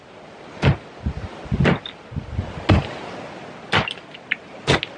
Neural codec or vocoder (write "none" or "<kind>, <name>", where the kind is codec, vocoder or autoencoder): none